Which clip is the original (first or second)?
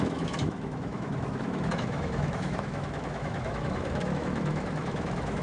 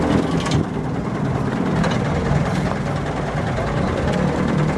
second